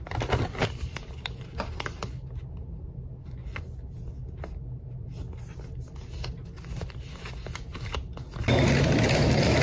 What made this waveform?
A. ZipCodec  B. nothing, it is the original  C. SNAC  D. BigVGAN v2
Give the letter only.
B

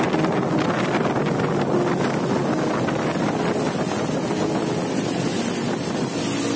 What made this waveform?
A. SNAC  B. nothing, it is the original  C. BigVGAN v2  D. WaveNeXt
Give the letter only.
B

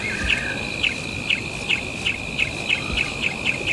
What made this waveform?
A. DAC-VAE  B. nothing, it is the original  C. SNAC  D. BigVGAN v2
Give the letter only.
B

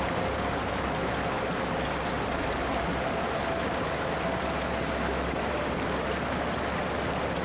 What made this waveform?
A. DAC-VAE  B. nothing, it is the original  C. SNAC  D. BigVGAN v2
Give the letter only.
B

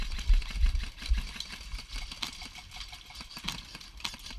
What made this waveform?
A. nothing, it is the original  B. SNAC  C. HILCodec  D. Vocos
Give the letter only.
A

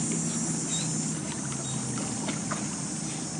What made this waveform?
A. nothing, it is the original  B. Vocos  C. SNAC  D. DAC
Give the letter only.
A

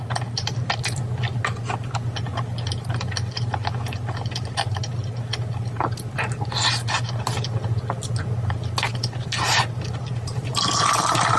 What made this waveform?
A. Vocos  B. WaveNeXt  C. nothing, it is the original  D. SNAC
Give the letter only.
C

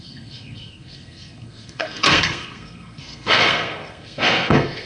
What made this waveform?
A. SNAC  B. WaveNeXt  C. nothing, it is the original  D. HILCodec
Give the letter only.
A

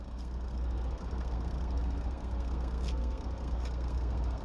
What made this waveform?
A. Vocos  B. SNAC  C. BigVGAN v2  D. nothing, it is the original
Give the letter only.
B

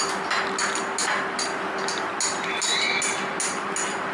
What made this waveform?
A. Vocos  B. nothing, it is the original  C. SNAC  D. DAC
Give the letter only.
B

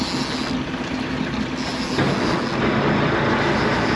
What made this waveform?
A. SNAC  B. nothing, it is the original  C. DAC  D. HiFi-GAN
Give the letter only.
B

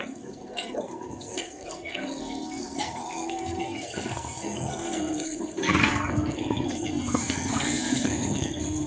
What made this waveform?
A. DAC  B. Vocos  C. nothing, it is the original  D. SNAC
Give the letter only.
D